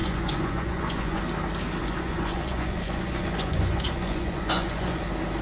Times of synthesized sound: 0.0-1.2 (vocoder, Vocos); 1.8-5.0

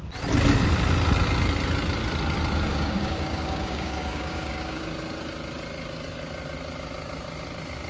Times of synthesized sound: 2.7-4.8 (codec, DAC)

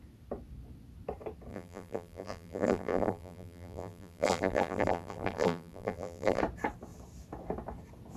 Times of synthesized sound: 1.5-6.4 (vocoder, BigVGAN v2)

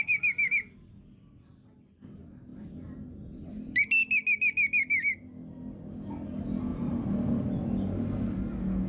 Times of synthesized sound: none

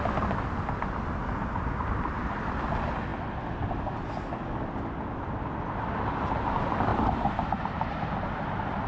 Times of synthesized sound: 6.9-7.5 (vocoder, BigVGAN v2)

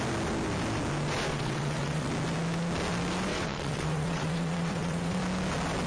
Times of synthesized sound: 1.3-2.1 (vocoder, WaveNeXt); 3.3-5.2